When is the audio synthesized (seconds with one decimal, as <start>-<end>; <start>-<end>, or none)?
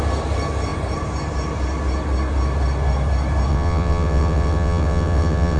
3.5-5.6